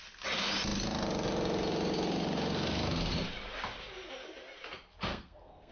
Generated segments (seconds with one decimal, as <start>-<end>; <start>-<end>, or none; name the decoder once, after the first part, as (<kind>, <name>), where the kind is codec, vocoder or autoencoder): 5.1-5.7 (codec, SNAC)